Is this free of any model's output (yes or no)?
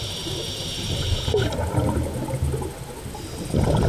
yes